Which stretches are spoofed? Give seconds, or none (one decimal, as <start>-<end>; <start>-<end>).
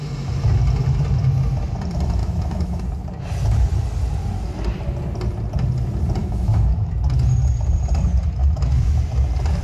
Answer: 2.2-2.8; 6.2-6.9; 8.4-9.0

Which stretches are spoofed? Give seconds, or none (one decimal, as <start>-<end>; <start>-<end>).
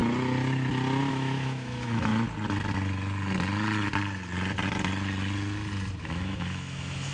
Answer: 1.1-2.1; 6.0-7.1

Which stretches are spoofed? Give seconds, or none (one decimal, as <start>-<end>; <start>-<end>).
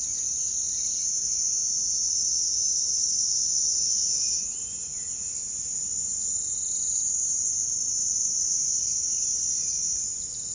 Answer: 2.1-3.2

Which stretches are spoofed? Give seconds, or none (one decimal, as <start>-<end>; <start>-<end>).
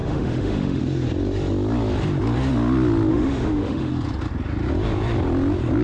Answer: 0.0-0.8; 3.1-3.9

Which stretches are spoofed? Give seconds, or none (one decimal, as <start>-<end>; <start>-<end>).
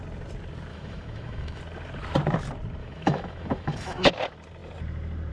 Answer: 0.7-1.6; 2.8-4.1